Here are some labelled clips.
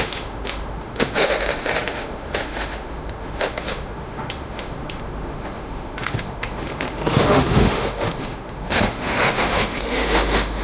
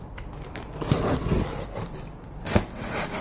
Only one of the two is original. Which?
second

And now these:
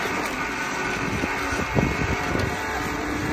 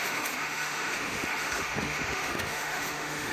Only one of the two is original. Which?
first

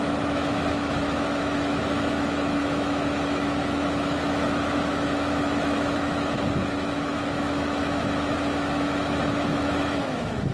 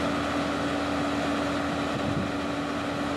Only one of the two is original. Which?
second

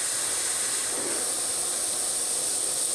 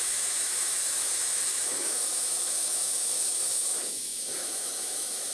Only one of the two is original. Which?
first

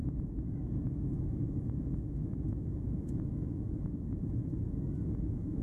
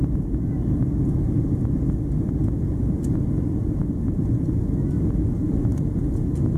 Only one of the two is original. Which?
second